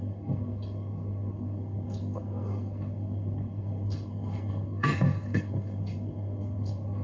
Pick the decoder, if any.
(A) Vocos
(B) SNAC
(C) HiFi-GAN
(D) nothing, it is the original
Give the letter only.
B